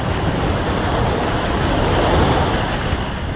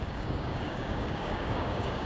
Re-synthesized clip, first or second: second